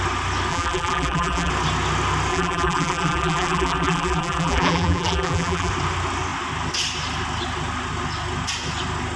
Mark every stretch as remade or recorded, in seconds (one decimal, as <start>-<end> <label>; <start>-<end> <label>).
0.0-0.5 recorded; 0.5-1.5 remade; 1.5-2.3 recorded; 2.3-5.7 remade; 5.7-9.2 recorded